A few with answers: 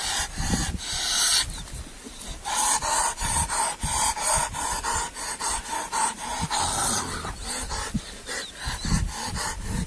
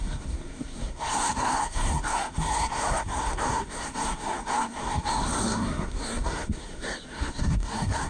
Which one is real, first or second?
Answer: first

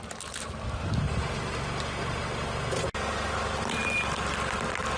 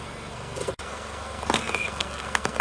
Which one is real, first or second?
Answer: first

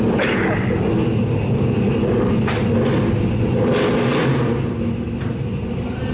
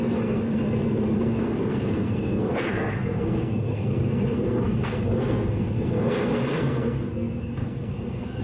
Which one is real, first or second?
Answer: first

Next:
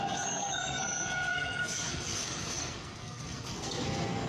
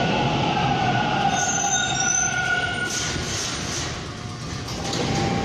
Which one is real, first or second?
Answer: second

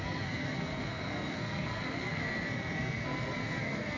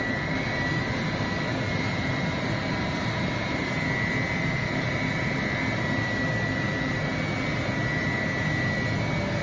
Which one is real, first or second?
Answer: second